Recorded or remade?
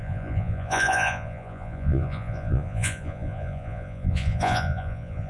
remade